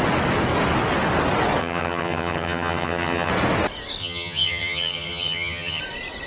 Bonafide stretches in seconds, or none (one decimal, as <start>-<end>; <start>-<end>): 0.0-1.6; 3.3-4.0; 5.8-6.3